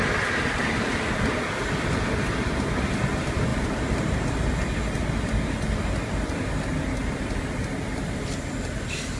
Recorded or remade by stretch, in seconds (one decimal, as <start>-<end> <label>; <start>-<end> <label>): 0.0-3.5 recorded; 3.5-4.2 remade; 4.2-9.2 recorded